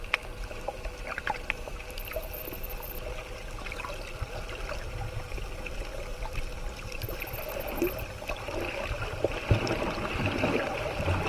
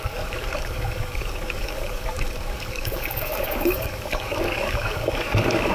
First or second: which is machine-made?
second